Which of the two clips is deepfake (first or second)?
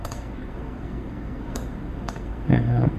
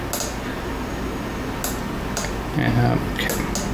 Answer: first